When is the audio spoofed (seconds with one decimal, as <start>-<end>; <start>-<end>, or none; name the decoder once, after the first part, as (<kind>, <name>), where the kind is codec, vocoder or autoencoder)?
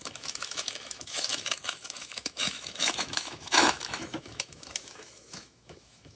0.0-6.2 (autoencoder, DAC-VAE)